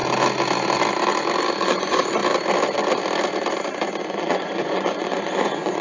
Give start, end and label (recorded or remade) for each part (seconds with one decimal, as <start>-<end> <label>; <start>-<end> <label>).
0.0-1.6 recorded; 1.6-2.2 remade; 2.2-4.1 recorded; 4.1-5.8 remade